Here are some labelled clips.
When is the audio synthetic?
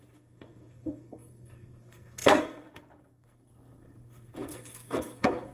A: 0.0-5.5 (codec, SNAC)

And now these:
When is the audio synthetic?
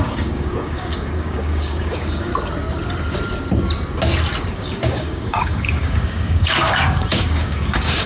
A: 0.0-2.3 (codec, DAC); 4.5-8.1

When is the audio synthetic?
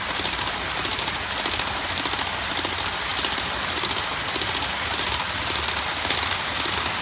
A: none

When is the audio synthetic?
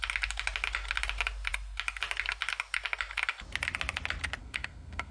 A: 4.4-5.1 (codec, SNAC)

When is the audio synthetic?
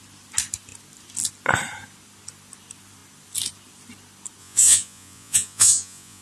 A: 4.4-6.2 (vocoder, Vocos)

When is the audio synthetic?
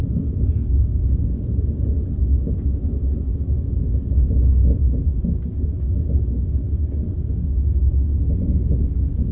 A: 8.2-8.7 (vocoder, Vocos)